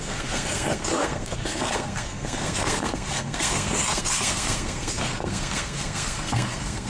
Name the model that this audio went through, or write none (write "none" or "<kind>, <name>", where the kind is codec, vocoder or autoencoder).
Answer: codec, SNAC